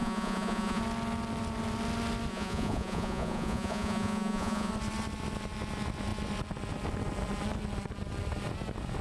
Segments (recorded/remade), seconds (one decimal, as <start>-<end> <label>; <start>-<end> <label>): 0.0-0.8 remade; 0.8-2.3 recorded; 2.3-4.7 remade; 4.7-9.0 recorded